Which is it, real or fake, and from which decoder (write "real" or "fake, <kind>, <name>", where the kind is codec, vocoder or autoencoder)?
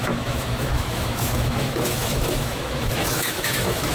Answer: fake, autoencoder, DAC-VAE